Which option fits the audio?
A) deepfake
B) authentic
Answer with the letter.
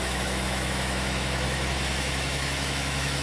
A